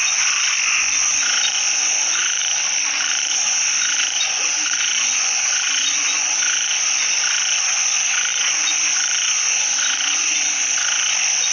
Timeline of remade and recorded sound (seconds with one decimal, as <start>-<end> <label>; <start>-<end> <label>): 0.0-2.4 remade; 2.4-3.2 recorded; 3.2-11.5 remade